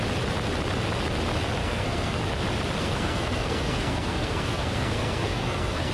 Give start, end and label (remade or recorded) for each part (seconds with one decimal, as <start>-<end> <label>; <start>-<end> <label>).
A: 0.0-1.6 recorded; 1.6-2.2 remade; 2.2-2.8 recorded; 2.8-5.9 remade